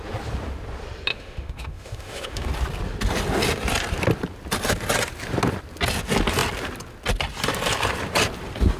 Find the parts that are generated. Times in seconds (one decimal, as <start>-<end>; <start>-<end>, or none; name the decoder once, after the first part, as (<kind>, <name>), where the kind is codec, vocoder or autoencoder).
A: 1.1-2.5 (autoencoder, DAC-VAE)